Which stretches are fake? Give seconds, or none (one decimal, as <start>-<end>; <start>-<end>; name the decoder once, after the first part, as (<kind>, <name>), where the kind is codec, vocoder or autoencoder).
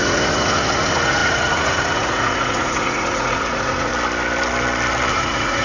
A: 0.0-3.9 (vocoder, Vocos); 5.1-5.6